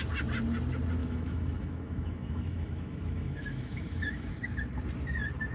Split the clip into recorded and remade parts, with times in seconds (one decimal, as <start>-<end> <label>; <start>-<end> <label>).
0.0-1.0 recorded; 1.0-4.3 remade; 4.3-5.5 recorded

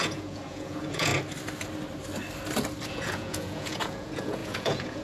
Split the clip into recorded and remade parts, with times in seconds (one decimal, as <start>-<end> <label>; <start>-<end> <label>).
0.0-1.1 remade; 1.1-2.9 recorded; 2.9-5.0 remade